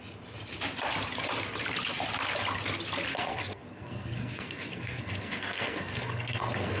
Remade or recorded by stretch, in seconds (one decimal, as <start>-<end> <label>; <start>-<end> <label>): 0.0-3.1 recorded; 3.1-6.8 remade